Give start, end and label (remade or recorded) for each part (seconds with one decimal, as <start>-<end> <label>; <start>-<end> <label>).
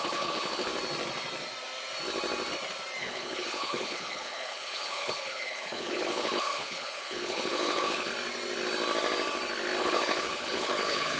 0.0-0.7 remade; 0.7-3.0 recorded; 3.0-8.1 remade; 8.1-9.8 recorded; 9.8-11.2 remade